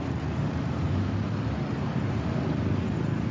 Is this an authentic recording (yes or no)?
yes